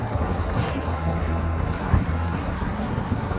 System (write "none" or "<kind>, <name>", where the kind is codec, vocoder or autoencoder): codec, SNAC